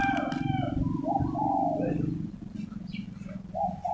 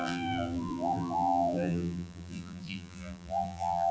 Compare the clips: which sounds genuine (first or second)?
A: first